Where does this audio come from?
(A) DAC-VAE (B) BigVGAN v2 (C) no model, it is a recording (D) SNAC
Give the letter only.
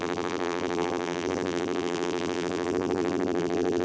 B